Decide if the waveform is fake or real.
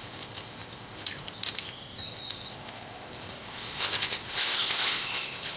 fake